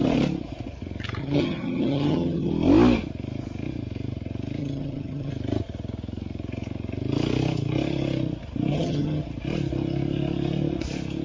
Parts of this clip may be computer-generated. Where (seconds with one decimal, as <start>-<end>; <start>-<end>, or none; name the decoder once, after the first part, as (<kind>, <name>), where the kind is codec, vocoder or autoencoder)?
1.2-2.5 (vocoder, HiFi-GAN); 4.6-5.3; 8.7-9.2